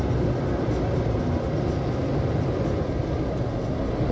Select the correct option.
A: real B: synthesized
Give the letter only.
A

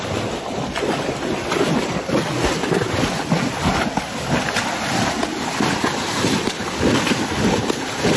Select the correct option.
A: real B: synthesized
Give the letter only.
A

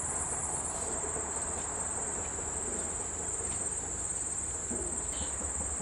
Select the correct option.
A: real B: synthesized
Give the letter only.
B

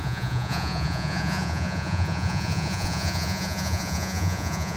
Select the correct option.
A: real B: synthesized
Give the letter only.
B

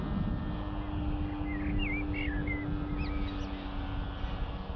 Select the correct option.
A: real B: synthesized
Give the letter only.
A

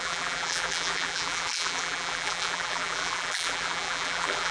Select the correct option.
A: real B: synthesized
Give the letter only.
B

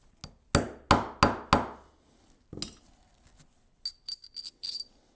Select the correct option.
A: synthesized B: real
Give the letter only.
B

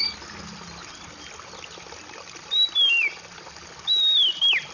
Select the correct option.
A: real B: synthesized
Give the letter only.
A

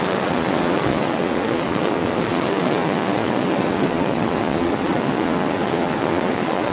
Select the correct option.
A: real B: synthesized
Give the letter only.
B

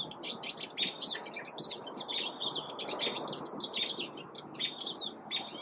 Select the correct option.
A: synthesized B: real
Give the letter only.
B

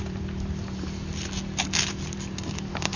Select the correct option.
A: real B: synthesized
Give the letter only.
A